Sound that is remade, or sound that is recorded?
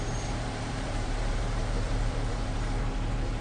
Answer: remade